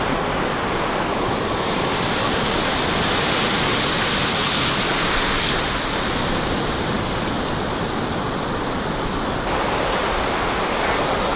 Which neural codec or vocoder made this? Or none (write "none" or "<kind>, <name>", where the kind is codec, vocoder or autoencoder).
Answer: none